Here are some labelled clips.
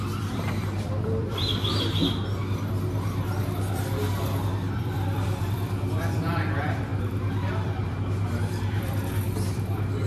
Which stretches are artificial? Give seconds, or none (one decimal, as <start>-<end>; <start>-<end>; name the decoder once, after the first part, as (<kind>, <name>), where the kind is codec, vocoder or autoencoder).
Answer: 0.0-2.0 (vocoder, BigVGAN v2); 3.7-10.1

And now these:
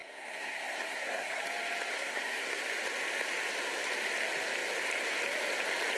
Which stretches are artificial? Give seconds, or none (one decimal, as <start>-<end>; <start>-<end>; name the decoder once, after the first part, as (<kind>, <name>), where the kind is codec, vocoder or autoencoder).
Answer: 0.0-1.4 (codec, SNAC); 1.9-2.6

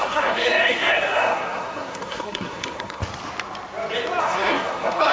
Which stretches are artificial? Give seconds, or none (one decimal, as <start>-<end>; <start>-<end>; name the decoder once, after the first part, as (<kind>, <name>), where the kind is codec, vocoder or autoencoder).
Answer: 0.0-3.0 (codec, SNAC); 4.2-5.1

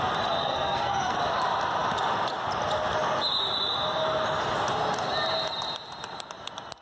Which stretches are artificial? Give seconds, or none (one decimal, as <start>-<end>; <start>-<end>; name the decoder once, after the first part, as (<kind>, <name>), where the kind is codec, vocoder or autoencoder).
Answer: 0.4-1.2 (codec, SNAC)